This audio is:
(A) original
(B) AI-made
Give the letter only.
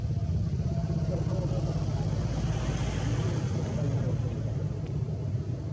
A